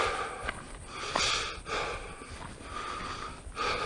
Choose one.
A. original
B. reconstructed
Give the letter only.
A